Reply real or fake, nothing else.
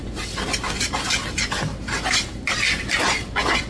real